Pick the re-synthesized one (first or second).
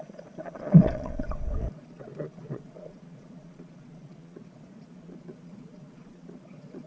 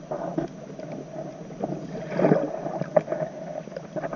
first